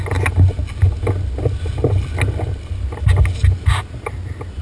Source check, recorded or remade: recorded